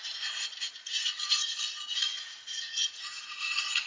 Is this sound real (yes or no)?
no